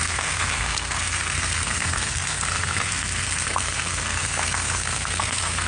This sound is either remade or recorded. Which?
remade